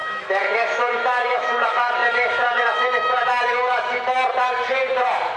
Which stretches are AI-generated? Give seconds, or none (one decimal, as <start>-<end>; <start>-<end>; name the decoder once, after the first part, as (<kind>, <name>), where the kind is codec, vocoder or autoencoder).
0.0-4.2 (autoencoder, DAC-VAE)